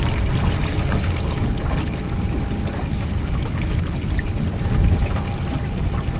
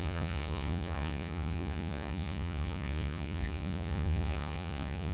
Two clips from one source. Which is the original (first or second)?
first